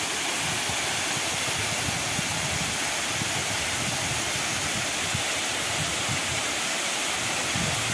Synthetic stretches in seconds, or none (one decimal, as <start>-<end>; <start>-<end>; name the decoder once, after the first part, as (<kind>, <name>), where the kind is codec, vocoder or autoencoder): 6.4-6.9 (vocoder, BigVGAN v2)